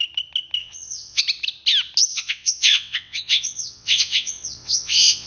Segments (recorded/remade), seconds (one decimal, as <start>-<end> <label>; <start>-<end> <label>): 0.0-0.6 recorded; 0.6-1.2 remade; 1.2-2.1 recorded; 2.1-5.3 remade